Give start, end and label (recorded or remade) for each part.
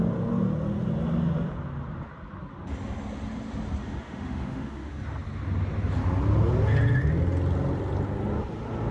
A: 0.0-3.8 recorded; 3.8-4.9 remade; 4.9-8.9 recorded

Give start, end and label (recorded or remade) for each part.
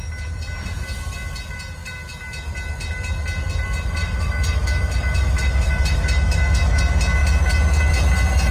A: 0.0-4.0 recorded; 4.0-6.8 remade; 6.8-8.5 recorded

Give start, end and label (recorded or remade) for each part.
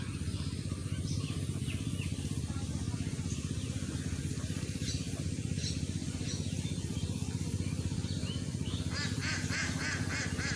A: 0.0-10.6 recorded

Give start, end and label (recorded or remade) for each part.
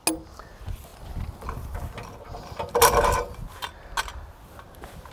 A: 0.0-5.1 recorded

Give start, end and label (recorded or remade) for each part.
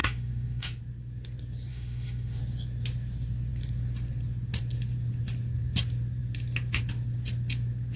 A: 0.0-0.8 remade; 0.8-1.7 recorded; 1.7-2.4 remade; 2.4-8.0 recorded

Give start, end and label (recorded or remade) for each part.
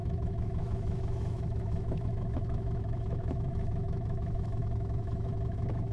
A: 0.0-5.9 remade